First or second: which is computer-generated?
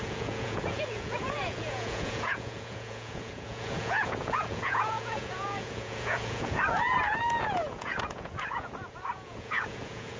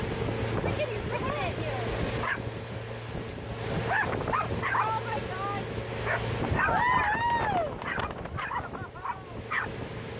first